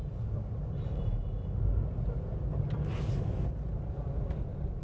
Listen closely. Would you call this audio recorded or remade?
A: recorded